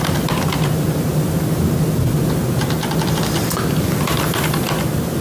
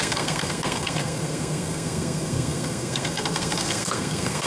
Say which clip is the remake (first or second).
second